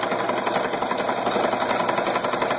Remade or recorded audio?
recorded